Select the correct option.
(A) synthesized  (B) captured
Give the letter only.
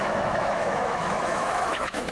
A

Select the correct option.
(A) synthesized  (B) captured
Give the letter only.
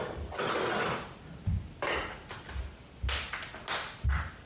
B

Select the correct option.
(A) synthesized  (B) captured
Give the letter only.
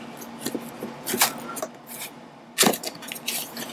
B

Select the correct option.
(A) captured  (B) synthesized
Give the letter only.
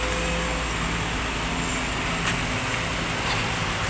A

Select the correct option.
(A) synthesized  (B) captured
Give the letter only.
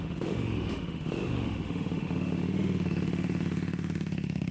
A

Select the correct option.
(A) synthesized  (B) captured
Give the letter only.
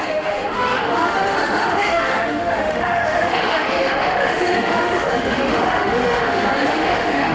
A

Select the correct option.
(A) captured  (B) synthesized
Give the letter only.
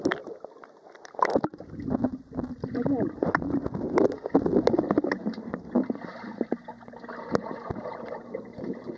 A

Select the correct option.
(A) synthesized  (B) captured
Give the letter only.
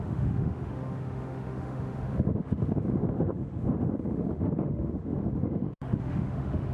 A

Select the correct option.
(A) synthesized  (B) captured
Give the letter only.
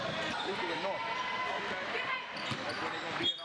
B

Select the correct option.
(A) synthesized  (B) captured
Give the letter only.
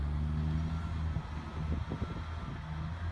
B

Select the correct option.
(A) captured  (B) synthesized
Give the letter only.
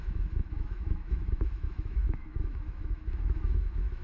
B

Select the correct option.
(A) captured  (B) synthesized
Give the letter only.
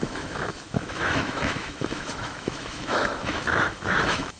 B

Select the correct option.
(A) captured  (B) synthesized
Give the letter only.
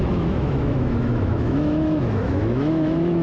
B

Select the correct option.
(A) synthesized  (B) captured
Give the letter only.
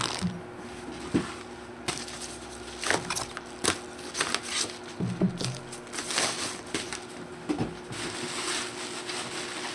B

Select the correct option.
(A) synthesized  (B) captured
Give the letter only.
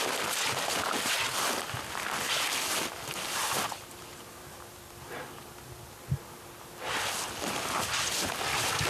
B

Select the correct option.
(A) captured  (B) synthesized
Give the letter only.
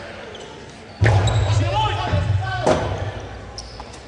A